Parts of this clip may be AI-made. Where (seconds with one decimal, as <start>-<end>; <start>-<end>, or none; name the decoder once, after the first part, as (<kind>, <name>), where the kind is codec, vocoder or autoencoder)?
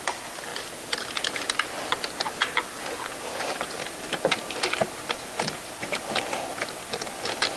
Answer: none